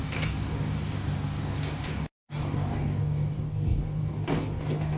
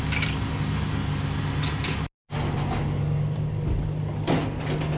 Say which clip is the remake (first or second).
first